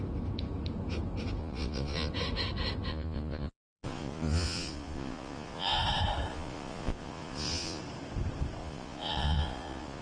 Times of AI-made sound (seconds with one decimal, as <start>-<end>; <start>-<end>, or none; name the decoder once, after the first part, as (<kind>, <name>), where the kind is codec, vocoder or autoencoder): 1.4-2.1 (vocoder, Vocos); 2.9-5.8; 6.3-7.8; 8.6-10.0